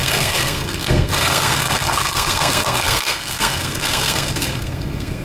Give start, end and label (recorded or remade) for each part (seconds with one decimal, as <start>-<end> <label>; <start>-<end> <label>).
0.0-5.2 remade

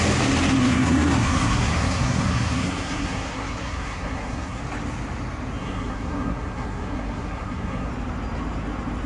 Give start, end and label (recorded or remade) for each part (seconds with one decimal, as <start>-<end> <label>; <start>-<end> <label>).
0.0-0.6 recorded; 0.6-4.6 remade; 4.6-5.6 recorded; 5.6-7.9 remade; 7.9-9.1 recorded

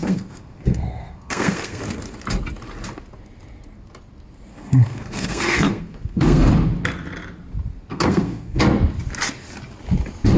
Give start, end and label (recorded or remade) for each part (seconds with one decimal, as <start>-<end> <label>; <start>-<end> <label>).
0.0-1.8 remade; 1.8-4.5 recorded; 4.5-6.5 remade; 6.5-7.9 recorded; 7.9-8.6 remade; 8.6-10.4 recorded

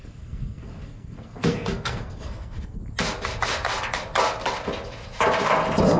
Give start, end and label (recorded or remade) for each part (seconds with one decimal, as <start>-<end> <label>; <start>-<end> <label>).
0.0-2.8 remade; 2.8-6.0 recorded

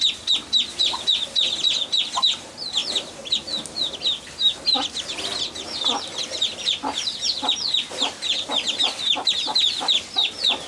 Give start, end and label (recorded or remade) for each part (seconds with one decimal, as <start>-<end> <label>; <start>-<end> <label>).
0.0-10.7 recorded